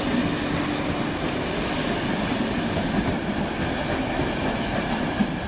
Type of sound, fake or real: real